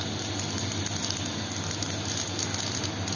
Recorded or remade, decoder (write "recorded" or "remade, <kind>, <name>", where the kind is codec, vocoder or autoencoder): recorded